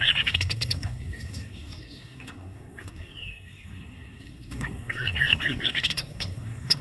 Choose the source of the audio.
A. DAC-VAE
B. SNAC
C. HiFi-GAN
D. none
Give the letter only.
B